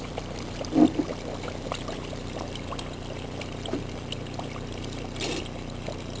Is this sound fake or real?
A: real